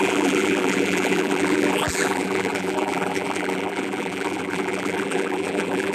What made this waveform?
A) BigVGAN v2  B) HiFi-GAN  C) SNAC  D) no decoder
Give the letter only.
A